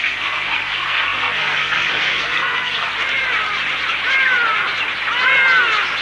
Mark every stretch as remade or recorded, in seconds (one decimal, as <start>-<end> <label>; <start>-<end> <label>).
0.0-2.9 remade; 2.9-6.0 recorded